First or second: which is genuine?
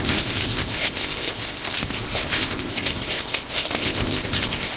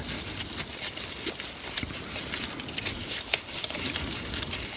second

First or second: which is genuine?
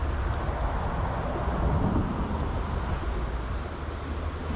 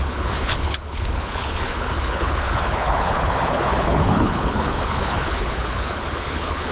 first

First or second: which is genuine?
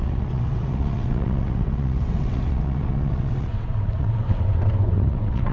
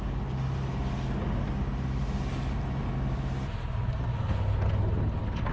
second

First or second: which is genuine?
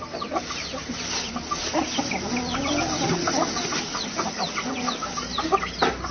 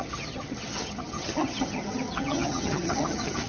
first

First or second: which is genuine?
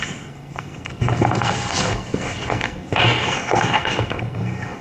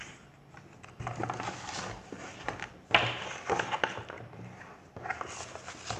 second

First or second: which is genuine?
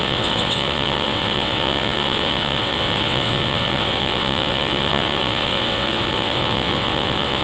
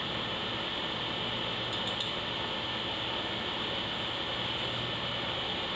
second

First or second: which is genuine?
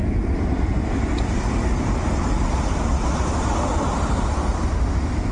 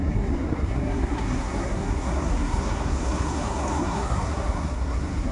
first